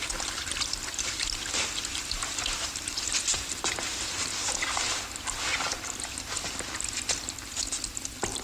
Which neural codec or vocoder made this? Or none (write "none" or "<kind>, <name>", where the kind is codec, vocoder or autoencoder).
none